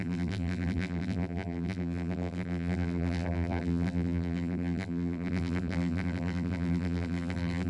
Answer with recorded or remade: remade